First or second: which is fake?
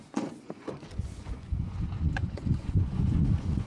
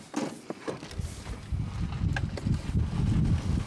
first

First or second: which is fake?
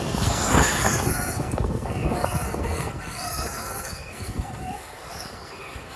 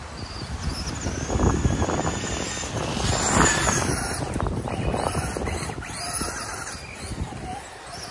first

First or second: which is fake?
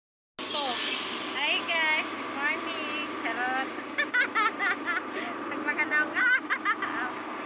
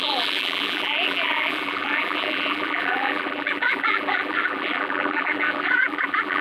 second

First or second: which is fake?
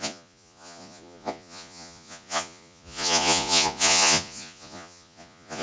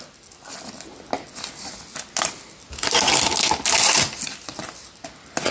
first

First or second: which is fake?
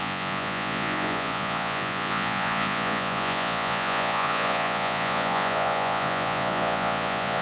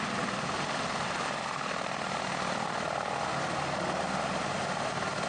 first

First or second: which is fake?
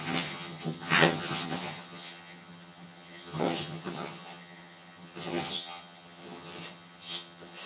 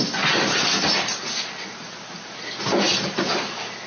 first